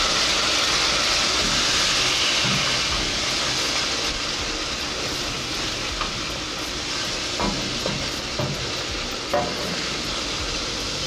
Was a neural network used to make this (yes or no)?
no